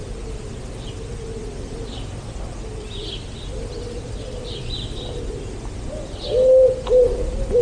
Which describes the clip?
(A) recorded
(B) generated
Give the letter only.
A